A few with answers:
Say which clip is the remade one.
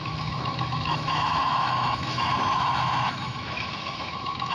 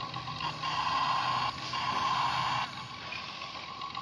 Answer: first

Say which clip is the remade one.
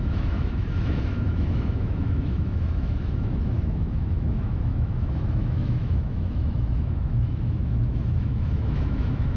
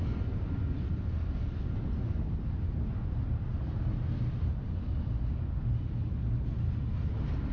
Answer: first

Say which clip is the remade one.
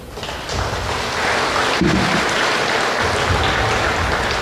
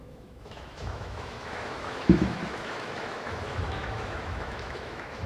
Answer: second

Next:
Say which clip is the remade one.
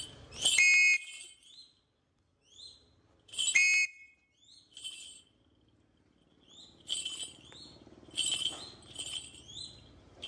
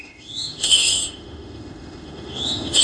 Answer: second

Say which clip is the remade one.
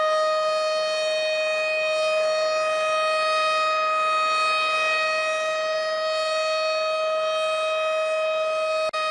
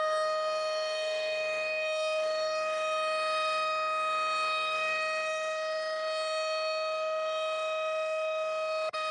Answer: second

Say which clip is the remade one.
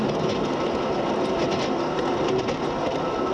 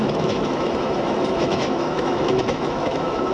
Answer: second